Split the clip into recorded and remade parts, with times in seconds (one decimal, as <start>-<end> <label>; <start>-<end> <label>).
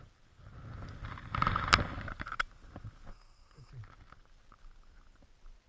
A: 0.0-3.1 recorded; 3.1-3.7 remade; 3.7-5.7 recorded